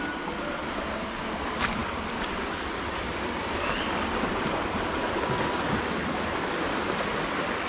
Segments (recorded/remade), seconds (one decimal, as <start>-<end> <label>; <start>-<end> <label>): 0.0-7.7 recorded